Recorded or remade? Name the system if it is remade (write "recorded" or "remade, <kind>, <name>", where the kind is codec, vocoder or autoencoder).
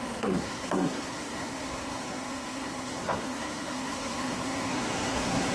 remade, codec, SNAC